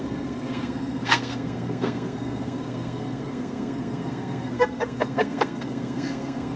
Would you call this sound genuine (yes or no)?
no